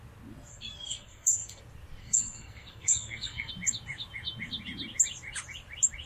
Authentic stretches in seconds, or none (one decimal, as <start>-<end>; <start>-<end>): 0.0-0.5; 1.6-2.0; 3.5-6.1